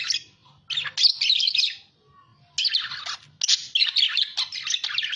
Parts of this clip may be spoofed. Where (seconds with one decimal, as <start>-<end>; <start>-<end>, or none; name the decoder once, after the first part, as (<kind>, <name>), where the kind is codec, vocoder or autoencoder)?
none